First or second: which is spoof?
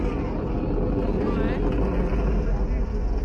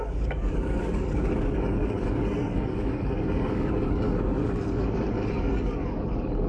second